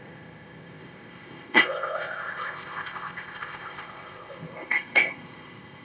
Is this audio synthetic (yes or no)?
yes